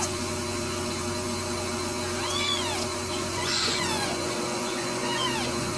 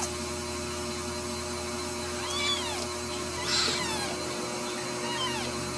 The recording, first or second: second